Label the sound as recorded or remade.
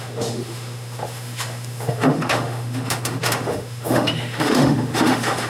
remade